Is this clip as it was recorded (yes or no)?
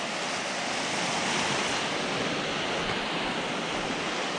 yes